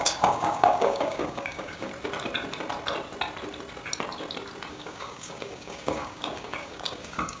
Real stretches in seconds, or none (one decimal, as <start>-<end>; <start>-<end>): 1.9-4.7